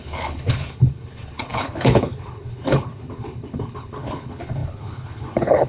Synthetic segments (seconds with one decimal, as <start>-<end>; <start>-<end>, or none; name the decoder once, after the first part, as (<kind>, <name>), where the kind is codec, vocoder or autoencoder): 0.0-5.7 (codec, HILCodec)

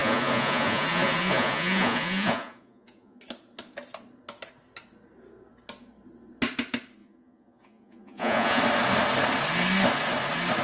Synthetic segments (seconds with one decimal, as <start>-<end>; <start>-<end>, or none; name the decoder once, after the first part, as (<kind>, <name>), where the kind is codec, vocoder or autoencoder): 0.0-3.2 (vocoder, Vocos); 7.0-8.6

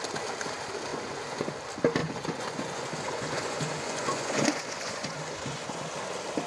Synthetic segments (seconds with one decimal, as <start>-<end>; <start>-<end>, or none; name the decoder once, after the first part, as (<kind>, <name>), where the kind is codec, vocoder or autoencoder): 0.9-1.5 (vocoder, Vocos); 2.0-5.9